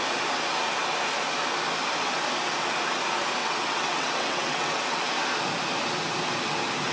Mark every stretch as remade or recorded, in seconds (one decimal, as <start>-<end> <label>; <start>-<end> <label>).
0.0-3.4 recorded; 3.4-5.0 remade; 5.0-6.9 recorded